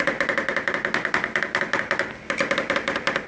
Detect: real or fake real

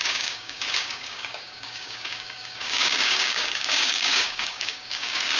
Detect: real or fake fake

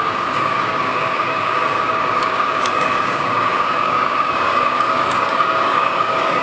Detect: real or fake fake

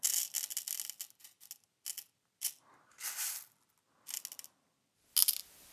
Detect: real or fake real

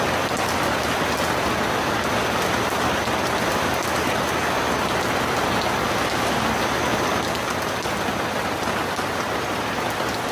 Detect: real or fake real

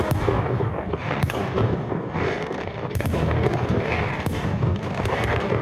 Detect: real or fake fake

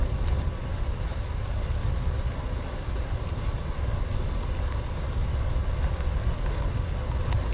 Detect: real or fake real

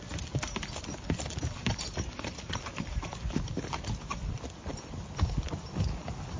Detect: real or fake real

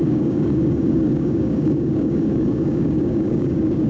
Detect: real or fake fake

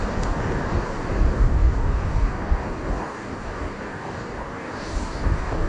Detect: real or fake fake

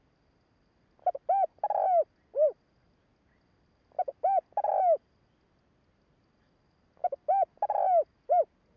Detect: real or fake real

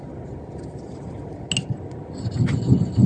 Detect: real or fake real